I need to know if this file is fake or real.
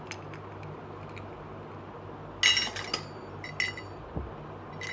real